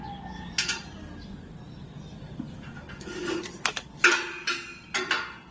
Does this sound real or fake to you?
real